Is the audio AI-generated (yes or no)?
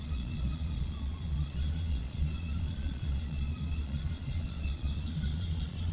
yes